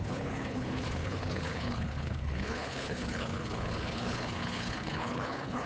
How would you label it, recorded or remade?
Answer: remade